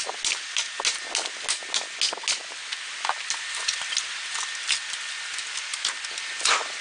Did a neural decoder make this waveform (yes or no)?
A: no